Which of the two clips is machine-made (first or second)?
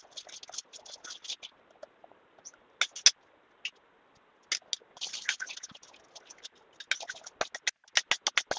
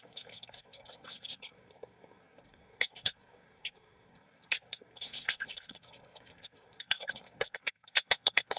second